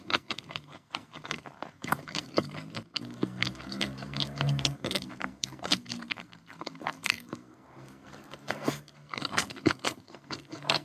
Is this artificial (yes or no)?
yes